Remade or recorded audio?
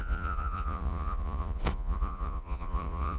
remade